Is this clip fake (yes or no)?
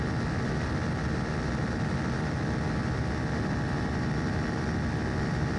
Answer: no